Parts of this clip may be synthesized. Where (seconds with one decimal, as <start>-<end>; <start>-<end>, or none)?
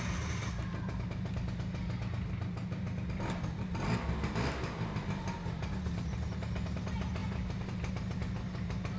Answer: none